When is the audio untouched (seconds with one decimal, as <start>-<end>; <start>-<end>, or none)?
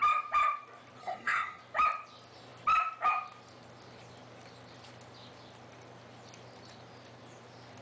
0.0-1.0; 1.6-7.8